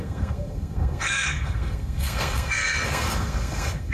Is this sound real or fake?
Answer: fake